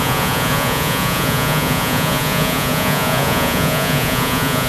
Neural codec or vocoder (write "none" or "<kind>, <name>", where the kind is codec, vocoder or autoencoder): vocoder, Vocos